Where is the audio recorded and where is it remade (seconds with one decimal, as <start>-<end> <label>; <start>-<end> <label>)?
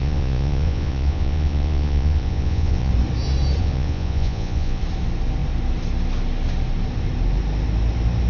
0.0-2.9 remade; 2.9-3.6 recorded; 3.6-4.8 remade; 4.8-8.3 recorded